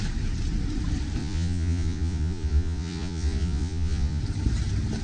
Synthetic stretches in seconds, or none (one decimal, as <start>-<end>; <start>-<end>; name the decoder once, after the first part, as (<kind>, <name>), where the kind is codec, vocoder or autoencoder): 1.2-4.2 (vocoder, Vocos)